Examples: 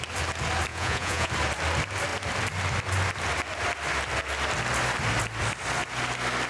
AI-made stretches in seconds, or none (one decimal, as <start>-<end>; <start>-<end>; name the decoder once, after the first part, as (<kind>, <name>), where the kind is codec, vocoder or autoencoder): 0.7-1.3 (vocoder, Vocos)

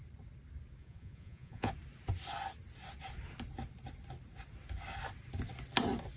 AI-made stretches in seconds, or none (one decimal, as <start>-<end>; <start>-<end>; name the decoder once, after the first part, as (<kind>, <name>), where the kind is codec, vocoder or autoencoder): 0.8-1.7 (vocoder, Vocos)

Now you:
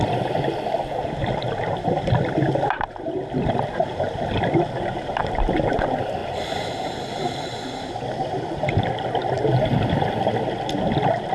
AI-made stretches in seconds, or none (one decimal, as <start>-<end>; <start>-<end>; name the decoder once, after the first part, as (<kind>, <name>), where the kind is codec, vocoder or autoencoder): none